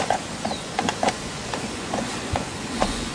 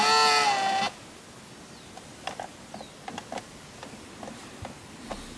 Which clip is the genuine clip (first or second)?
second